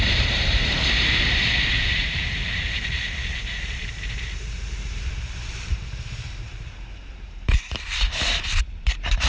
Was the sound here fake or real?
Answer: fake